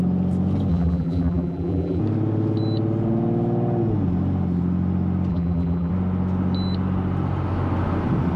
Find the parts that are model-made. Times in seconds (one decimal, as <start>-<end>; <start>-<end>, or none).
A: 0.7-2.0; 5.3-5.9